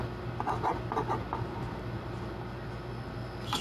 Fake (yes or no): no